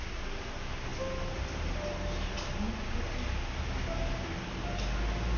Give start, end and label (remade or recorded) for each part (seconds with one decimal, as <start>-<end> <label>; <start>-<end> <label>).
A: 0.0-5.4 recorded